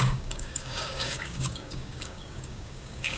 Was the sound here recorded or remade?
remade